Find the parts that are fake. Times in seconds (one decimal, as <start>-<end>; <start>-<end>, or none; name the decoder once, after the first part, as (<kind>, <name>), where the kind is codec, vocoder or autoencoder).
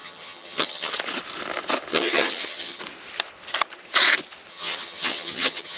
0.0-0.9 (vocoder, HiFi-GAN); 1.9-2.8; 4.5-5.8